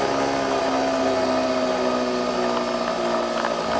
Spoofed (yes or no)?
no